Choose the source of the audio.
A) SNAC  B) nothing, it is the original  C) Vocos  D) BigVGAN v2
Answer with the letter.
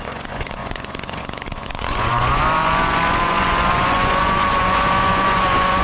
C